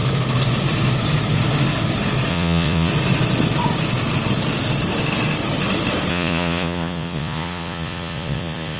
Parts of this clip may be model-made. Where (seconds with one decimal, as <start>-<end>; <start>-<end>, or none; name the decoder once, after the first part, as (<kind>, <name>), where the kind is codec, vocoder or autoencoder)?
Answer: 2.3-2.9 (vocoder, Vocos); 6.1-8.8